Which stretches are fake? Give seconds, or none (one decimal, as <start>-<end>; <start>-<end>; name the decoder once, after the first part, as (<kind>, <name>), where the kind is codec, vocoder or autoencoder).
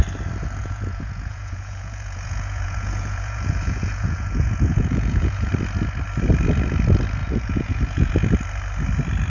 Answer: 0.6-5.5 (vocoder, Vocos); 7.2-8.1